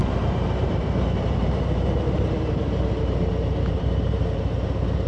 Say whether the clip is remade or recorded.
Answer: remade